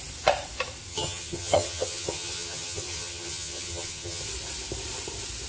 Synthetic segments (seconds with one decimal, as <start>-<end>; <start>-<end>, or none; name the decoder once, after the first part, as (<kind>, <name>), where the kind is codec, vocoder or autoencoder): 0.9-4.2 (vocoder, HiFi-GAN)